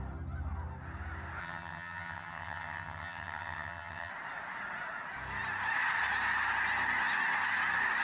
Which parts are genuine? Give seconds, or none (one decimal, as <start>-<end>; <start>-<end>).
0.0-1.4; 4.1-8.0